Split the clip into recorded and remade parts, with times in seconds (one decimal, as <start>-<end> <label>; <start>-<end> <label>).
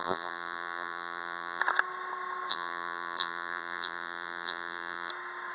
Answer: 0.0-1.6 remade; 1.6-2.5 recorded; 2.5-5.1 remade; 5.1-5.5 recorded